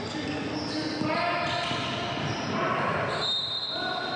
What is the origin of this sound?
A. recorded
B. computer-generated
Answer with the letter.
A